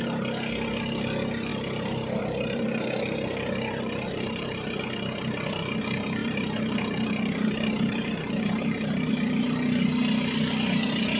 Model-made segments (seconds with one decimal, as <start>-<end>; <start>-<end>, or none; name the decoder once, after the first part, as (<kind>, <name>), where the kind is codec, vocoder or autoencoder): 1.5-4.8 (vocoder, BigVGAN v2); 6.2-9.1